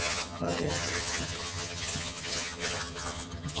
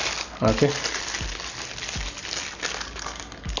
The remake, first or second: first